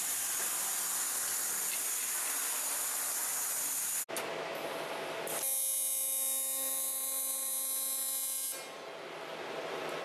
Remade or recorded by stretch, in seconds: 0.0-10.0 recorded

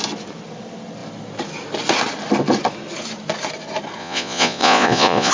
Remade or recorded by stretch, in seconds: 0.0-4.0 recorded; 4.0-5.3 remade

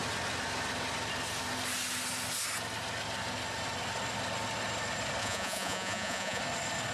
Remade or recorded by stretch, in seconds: 0.0-5.2 recorded; 5.2-6.4 remade; 6.4-6.9 recorded